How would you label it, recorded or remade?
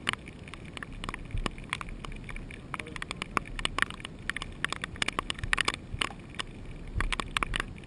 recorded